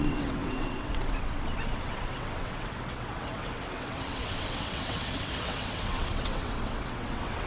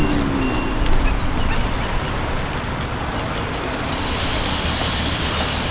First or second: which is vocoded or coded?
first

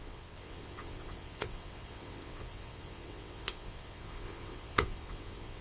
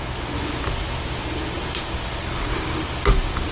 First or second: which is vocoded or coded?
first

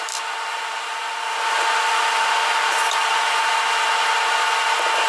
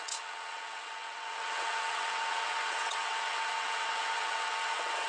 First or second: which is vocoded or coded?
second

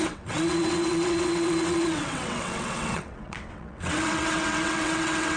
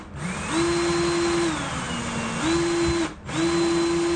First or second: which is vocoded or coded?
first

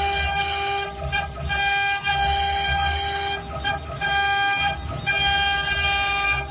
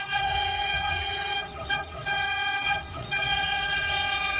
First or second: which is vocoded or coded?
second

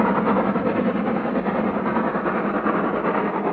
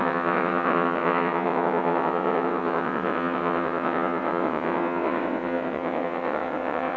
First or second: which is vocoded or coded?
second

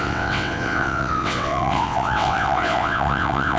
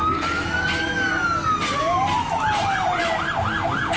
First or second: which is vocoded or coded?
first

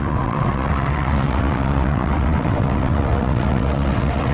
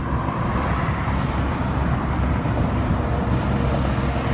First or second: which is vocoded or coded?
first